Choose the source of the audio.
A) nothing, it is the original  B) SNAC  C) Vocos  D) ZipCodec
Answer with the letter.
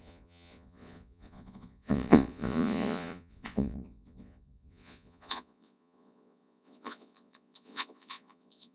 C